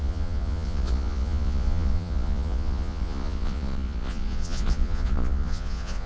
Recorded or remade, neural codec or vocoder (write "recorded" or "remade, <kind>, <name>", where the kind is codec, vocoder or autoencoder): remade, vocoder, Vocos